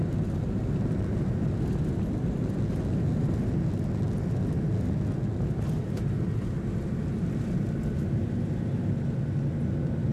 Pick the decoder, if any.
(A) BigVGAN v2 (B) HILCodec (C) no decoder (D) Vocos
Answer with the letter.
C